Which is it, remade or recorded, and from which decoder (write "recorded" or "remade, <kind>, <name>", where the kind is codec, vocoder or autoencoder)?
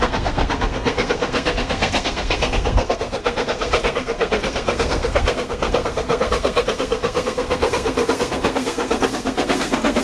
remade, codec, SNAC